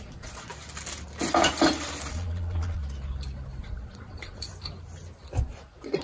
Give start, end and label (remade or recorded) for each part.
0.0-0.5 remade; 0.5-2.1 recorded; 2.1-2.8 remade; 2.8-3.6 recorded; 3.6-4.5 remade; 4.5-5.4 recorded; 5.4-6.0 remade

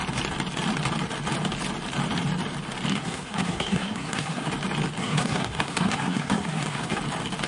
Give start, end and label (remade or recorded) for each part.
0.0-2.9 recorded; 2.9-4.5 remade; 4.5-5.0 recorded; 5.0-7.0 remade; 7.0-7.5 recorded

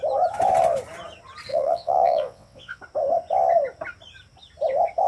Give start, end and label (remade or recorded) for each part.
0.0-1.5 recorded; 1.5-2.8 remade; 2.8-5.1 recorded